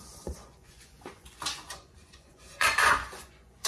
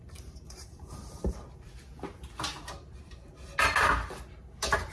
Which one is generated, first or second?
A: first